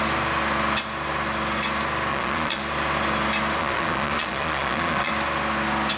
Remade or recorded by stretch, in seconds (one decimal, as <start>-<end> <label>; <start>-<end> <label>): 0.0-2.1 recorded; 2.1-2.6 remade; 2.6-3.6 recorded; 3.6-5.1 remade; 5.1-6.0 recorded